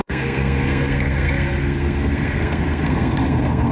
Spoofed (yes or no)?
yes